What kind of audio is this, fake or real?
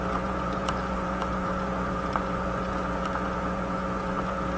fake